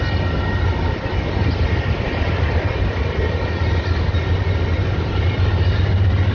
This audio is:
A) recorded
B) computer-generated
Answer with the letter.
A